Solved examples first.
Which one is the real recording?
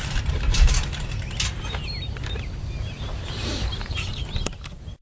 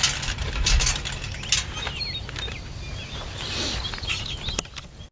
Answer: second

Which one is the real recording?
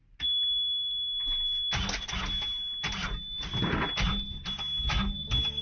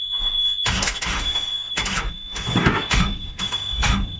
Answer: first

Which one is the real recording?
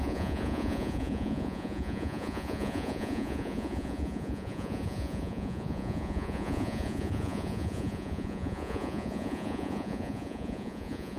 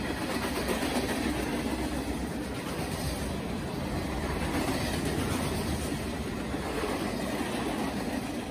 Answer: second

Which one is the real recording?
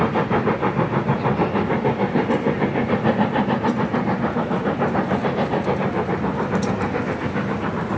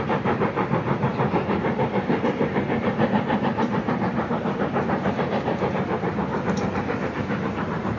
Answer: first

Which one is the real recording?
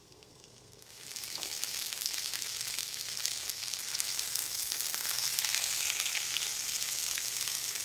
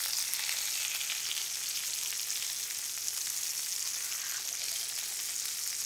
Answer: second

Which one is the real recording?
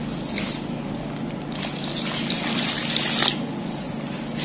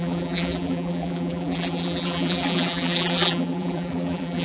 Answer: first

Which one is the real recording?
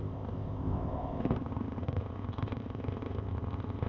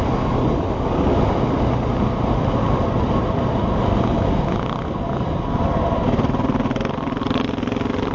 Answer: second